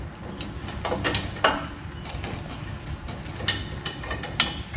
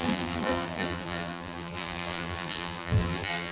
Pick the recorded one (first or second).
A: first